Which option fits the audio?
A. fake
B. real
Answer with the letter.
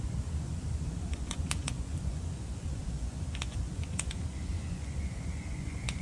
A